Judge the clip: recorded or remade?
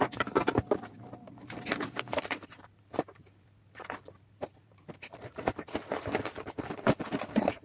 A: remade